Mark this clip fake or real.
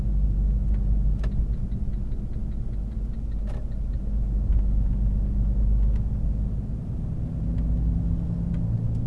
real